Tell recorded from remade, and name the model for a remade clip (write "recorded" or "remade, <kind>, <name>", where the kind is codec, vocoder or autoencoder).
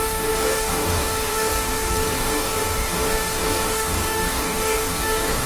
remade, codec, DAC